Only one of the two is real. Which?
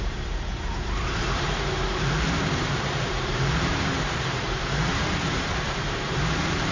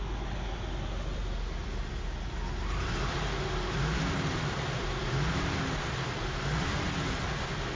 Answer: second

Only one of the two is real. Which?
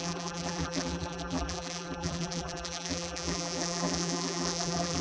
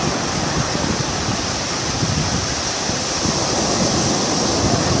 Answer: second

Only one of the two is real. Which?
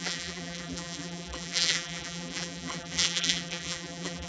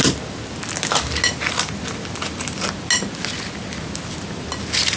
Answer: second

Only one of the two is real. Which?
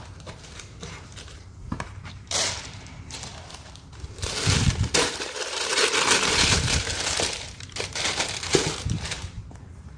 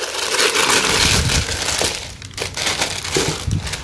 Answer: second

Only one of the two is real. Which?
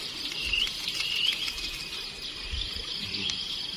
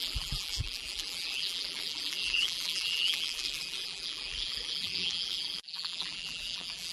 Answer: first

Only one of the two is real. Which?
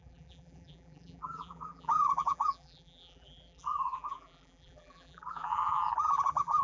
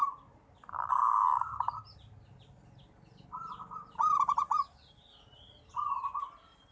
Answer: second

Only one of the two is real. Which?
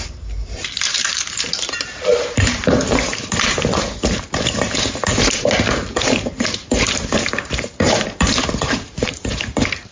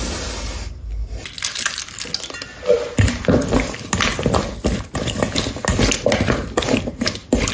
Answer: second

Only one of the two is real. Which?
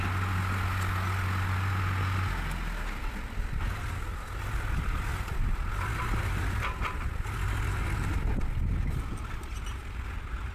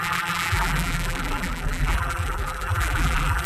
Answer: first